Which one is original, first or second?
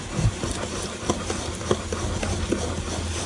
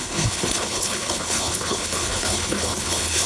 first